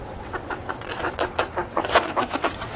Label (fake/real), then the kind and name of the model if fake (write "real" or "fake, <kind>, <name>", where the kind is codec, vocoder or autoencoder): fake, vocoder, WaveNeXt